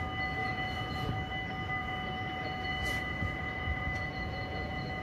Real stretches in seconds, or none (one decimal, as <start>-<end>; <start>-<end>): 0.0-0.4; 1.1-1.8